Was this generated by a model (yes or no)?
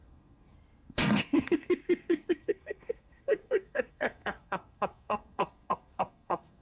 yes